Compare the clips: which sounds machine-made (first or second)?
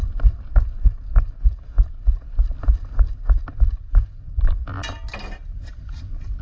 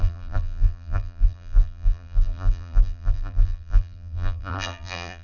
second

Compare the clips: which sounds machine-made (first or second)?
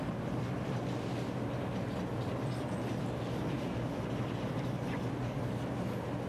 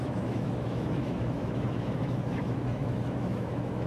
second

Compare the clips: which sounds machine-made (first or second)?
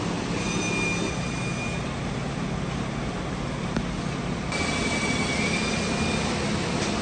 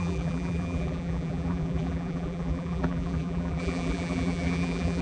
second